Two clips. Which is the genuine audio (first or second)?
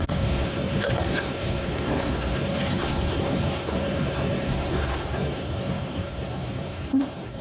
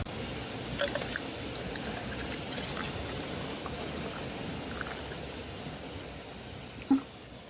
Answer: second